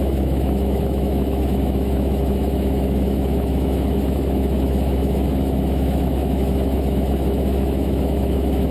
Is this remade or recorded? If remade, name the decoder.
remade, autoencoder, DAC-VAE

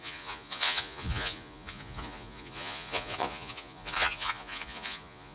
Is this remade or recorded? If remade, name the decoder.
remade, vocoder, Vocos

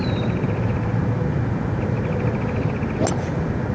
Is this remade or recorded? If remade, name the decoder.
recorded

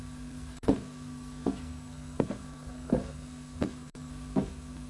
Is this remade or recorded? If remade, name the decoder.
remade, codec, SNAC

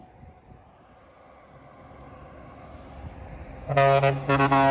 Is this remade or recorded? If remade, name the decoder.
recorded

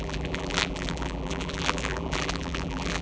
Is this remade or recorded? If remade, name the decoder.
remade, vocoder, BigVGAN v2